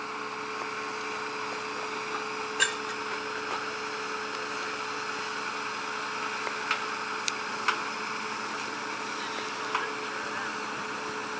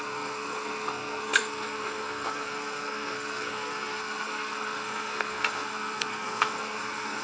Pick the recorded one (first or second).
first